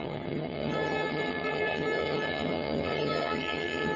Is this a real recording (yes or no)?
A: no